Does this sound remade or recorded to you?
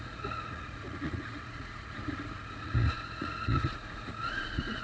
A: remade